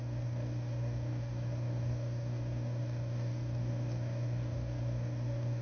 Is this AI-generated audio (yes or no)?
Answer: yes